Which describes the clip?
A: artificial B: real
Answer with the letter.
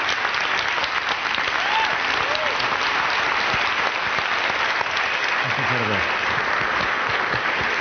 B